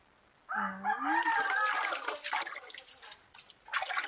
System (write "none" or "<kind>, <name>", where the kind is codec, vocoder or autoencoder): none